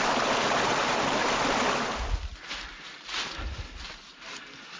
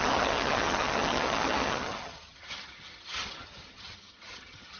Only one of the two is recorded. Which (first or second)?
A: first